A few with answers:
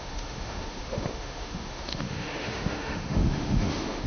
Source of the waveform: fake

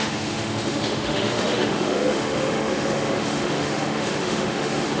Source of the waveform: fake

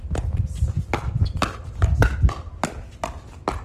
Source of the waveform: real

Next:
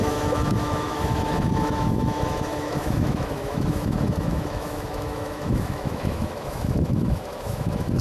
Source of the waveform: fake